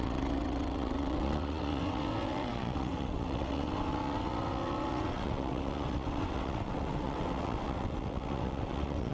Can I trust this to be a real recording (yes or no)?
no